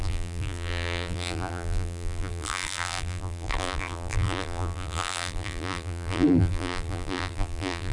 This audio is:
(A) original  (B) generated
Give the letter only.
B